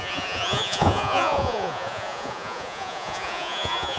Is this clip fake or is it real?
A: fake